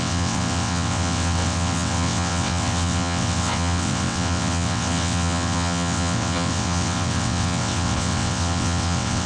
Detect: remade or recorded remade